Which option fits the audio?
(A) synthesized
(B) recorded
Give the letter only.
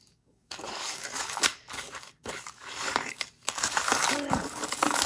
A